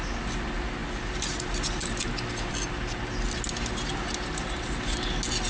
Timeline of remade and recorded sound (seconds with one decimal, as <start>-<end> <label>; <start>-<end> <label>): 0.0-5.5 recorded